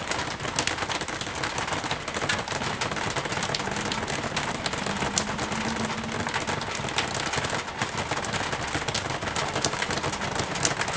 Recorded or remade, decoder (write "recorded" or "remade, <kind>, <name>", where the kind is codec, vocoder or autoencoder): recorded